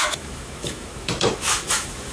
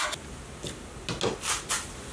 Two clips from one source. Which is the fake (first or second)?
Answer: first